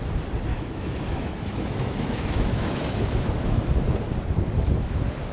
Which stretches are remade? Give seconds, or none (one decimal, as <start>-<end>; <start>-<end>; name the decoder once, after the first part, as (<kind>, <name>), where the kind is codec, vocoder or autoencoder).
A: 0.5-3.7 (autoencoder, DAC-VAE)